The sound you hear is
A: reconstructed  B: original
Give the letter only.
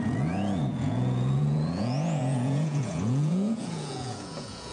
A